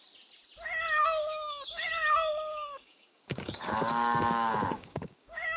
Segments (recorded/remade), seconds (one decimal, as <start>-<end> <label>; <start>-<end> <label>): 0.0-1.0 recorded; 1.0-1.9 remade; 1.9-2.5 recorded; 2.5-5.6 remade